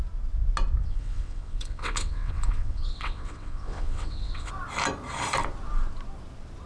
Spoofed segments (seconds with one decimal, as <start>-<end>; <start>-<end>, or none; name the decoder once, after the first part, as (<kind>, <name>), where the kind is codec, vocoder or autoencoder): 0.8-4.5 (vocoder, WaveNeXt)